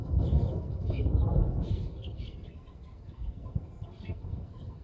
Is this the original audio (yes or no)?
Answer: no